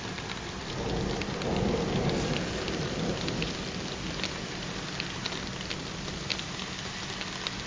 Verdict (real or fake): real